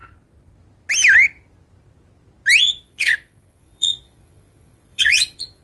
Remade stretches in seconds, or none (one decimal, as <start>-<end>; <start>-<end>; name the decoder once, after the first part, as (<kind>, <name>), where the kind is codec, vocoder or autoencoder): 2.6-5.6 (vocoder, Vocos)